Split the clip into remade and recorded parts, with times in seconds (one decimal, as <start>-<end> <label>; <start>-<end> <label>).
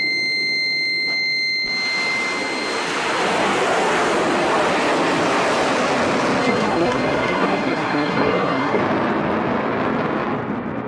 0.0-6.4 recorded; 6.4-8.8 remade; 8.8-10.9 recorded